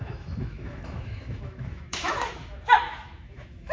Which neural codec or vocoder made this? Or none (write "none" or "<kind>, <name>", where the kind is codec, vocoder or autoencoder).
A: autoencoder, DAC-VAE